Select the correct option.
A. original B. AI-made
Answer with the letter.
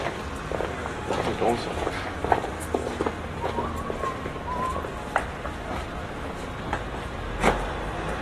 A